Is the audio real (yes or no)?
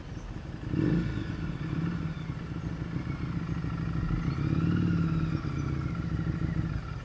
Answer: yes